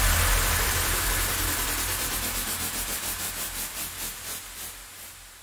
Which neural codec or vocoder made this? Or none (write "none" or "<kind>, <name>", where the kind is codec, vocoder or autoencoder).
vocoder, BigVGAN v2